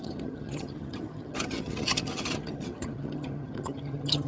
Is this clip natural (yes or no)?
no